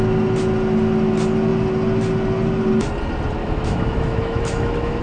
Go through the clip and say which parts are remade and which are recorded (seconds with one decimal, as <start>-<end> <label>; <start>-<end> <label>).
0.0-3.4 recorded; 3.4-5.0 remade